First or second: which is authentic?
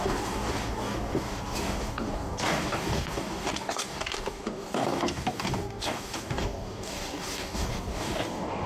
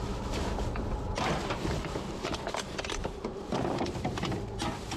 second